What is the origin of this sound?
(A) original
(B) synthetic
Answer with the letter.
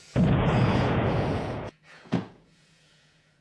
B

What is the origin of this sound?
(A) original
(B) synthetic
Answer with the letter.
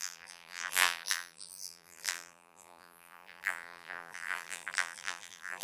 B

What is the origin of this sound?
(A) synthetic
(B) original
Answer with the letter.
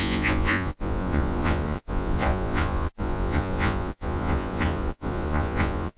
A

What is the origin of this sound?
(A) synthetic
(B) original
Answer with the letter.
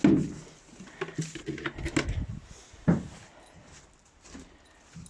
B